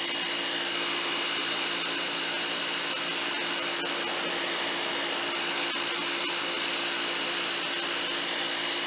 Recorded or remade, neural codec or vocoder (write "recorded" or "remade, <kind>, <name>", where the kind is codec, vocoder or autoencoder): recorded